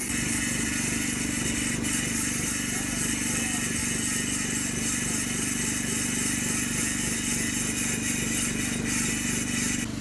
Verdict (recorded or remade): recorded